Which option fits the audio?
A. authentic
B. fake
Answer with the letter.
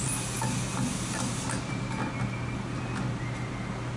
A